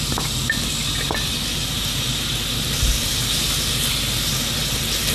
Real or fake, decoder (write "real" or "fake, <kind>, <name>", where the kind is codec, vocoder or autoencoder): real